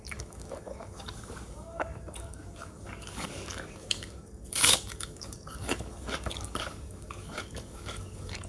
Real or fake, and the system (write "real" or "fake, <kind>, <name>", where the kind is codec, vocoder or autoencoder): fake, codec, DAC